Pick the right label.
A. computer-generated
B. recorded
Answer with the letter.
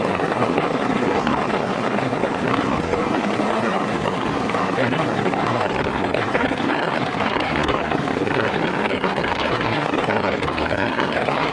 A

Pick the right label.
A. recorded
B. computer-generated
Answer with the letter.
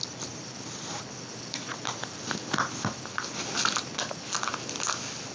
A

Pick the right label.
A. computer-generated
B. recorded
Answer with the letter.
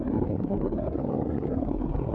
A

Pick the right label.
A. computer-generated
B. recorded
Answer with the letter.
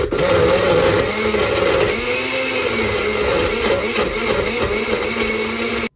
B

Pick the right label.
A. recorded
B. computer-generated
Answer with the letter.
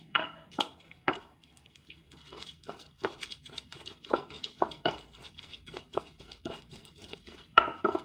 B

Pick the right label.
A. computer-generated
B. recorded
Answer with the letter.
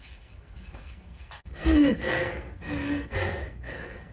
A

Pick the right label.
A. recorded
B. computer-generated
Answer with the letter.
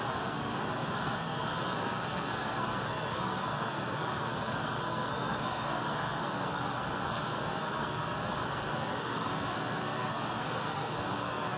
B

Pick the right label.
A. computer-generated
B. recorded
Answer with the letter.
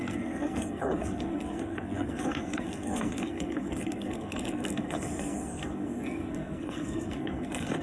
A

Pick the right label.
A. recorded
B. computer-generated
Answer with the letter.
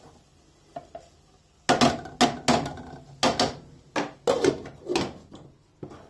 A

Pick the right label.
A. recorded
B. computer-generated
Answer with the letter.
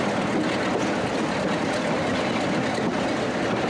A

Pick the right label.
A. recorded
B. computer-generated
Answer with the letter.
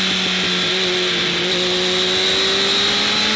A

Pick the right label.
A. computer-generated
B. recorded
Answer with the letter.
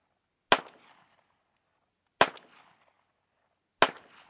B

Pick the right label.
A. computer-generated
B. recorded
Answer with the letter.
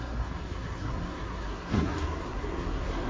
A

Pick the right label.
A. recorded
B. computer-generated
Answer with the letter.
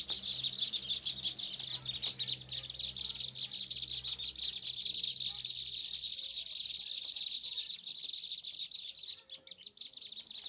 A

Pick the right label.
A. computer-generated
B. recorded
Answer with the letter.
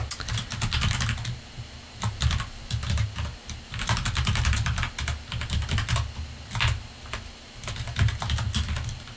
B